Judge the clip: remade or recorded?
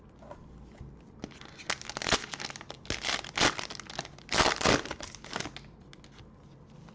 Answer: recorded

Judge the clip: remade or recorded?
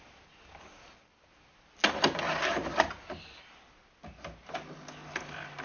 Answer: recorded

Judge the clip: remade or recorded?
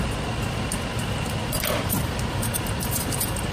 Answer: recorded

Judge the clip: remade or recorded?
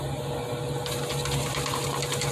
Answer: recorded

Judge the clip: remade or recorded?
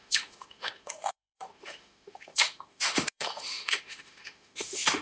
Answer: remade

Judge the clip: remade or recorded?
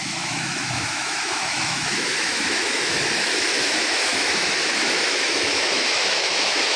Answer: remade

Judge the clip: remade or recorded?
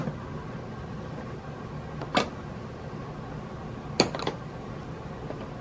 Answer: recorded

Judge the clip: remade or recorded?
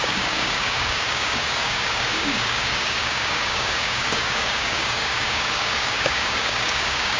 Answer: remade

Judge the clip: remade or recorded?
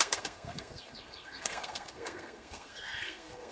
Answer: remade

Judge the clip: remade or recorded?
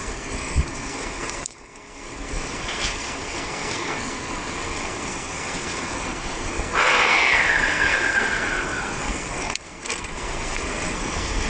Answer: remade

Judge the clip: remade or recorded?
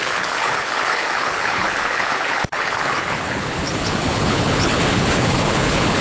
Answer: remade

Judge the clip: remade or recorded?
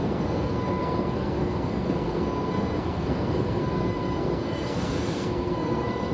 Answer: remade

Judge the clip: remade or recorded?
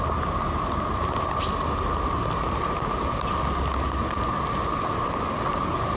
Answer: recorded